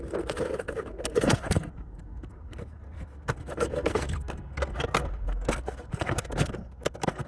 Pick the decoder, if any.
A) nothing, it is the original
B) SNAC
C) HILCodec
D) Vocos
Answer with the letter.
B